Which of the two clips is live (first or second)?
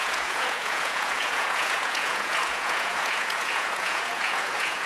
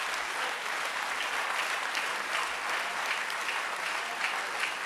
second